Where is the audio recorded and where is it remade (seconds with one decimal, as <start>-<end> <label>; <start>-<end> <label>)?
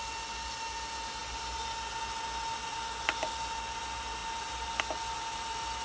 0.0-5.8 recorded